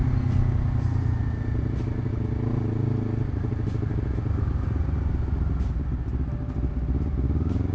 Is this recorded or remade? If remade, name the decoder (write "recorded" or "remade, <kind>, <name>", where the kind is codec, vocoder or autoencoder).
recorded